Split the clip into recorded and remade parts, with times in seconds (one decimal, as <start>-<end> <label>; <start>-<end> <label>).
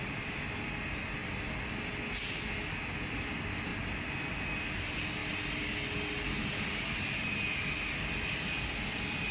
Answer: 0.0-9.3 recorded